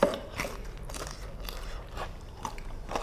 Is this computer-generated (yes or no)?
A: no